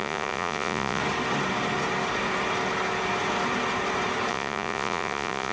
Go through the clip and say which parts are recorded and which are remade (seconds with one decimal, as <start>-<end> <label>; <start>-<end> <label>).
0.0-1.0 remade; 1.0-4.3 recorded; 4.3-5.5 remade

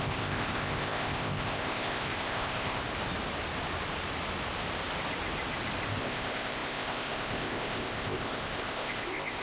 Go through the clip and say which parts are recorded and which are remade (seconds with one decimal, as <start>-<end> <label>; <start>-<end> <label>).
0.0-2.8 remade; 2.8-6.0 recorded; 6.0-9.4 remade

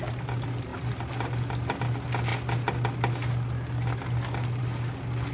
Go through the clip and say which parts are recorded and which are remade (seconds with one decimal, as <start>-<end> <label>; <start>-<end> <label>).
0.0-5.3 recorded

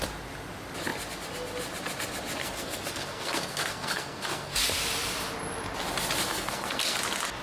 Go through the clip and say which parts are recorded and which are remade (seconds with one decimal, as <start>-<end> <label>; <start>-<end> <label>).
0.0-2.4 recorded; 2.4-4.6 remade; 4.6-6.3 recorded; 6.3-7.0 remade; 7.0-7.4 recorded

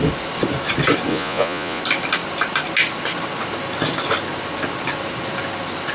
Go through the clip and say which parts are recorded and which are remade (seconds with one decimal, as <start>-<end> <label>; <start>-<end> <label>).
0.0-1.1 recorded; 1.1-1.8 remade; 1.8-5.9 recorded

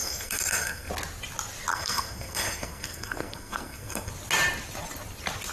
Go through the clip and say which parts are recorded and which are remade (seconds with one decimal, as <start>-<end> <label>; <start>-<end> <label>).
0.0-0.9 remade; 0.9-1.7 recorded; 1.7-4.1 remade; 4.1-5.5 recorded

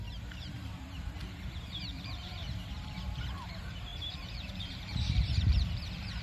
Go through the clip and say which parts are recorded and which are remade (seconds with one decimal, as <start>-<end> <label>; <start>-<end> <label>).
0.0-2.3 remade; 2.3-2.8 recorded; 2.8-6.2 remade